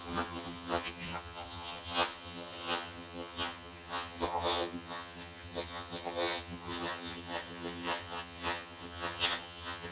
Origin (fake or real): fake